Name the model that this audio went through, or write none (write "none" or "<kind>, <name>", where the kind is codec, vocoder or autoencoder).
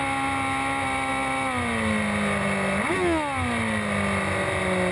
none